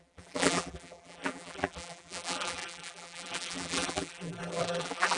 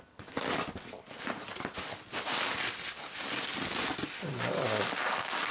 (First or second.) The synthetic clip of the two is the first